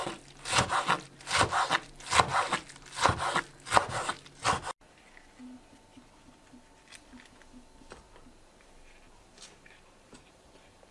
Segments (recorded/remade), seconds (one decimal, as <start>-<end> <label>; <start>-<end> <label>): 0.0-10.9 recorded